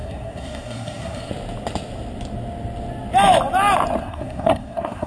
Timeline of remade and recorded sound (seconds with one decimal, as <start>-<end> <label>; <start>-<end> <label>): 0.0-1.3 remade; 1.3-4.0 recorded; 4.0-5.1 remade